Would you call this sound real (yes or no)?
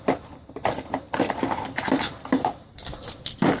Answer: yes